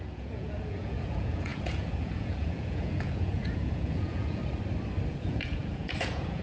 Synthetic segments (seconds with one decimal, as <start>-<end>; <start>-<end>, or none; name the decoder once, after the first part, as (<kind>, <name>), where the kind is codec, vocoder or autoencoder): 0.0-4.4 (vocoder, Vocos); 5.1-6.4